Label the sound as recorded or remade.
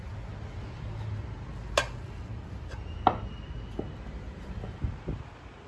recorded